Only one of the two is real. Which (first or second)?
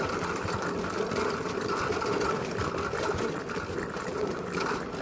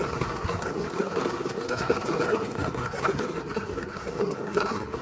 first